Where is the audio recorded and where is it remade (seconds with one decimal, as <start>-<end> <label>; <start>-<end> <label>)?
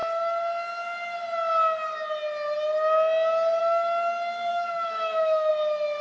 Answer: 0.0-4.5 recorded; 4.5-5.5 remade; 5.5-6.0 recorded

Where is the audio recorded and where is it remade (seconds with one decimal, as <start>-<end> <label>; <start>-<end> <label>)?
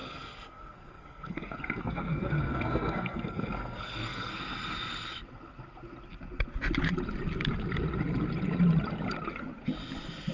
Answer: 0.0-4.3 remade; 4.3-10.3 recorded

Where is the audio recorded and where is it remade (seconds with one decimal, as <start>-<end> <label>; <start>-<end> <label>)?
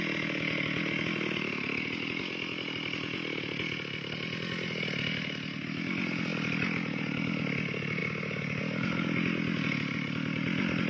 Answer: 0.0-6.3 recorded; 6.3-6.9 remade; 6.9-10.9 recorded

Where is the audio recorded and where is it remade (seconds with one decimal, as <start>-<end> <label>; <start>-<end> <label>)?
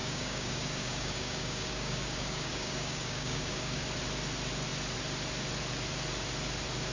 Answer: 0.0-3.8 remade; 3.8-6.9 recorded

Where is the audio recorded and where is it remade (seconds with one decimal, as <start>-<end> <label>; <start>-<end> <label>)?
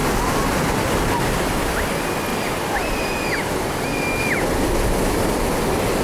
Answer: 0.0-1.7 remade; 1.7-2.3 recorded; 2.3-3.7 remade; 3.7-6.0 recorded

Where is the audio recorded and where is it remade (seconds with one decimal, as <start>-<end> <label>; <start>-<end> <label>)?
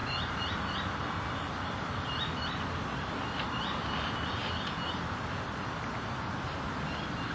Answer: 0.0-7.3 recorded